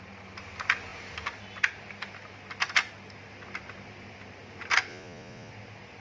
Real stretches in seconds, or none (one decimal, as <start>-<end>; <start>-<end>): 0.0-4.9; 5.5-6.0